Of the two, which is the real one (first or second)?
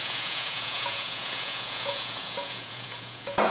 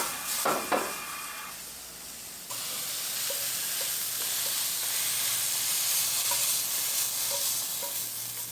second